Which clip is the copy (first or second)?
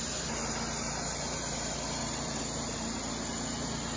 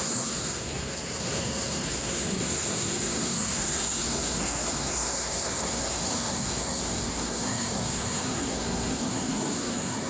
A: second